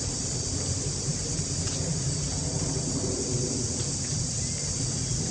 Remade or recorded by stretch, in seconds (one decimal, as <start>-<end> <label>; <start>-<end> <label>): 0.0-5.3 recorded